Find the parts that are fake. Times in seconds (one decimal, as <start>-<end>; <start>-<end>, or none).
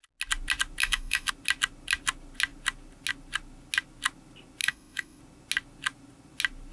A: 0.8-1.3; 4.6-5.2